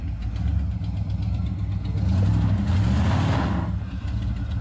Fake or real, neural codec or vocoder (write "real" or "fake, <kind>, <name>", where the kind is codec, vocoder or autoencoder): real